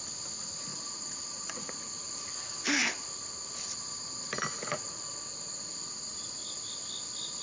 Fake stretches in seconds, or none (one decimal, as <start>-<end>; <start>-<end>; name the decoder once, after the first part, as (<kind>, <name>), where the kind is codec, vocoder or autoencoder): 0.7-1.7 (vocoder, Vocos); 4.5-5.0